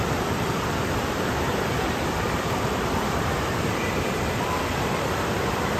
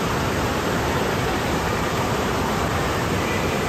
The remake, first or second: first